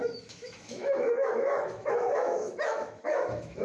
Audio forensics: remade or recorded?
remade